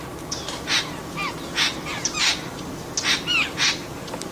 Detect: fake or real real